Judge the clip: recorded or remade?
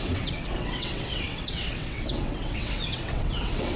remade